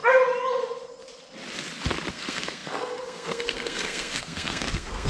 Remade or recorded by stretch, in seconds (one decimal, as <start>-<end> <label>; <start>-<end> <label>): 0.0-2.1 recorded; 2.1-5.1 remade